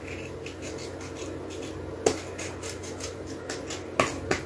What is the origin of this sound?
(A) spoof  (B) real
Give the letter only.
B